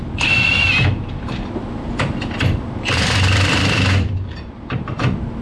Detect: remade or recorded remade